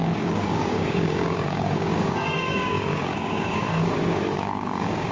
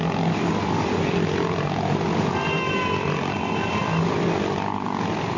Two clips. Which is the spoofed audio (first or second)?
first